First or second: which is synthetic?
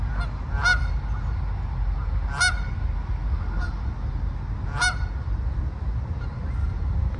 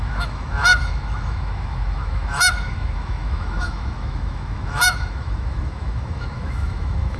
second